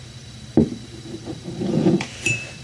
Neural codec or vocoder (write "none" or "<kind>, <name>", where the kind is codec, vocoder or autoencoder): vocoder, BigVGAN v2